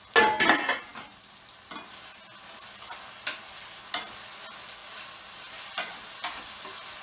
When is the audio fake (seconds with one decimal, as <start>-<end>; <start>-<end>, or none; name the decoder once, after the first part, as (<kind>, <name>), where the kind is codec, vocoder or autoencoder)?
4.8-5.7 (vocoder, BigVGAN v2)